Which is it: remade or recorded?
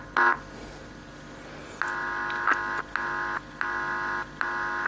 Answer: recorded